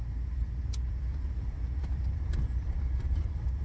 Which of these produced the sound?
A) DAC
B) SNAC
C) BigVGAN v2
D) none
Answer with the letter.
C